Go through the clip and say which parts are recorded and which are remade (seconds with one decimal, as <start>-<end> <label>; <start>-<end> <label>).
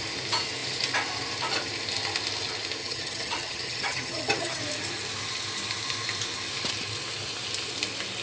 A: 0.0-2.8 recorded; 2.8-4.6 remade; 4.6-8.2 recorded